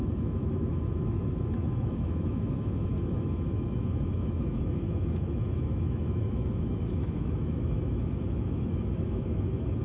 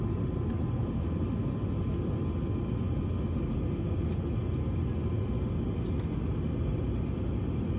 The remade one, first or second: first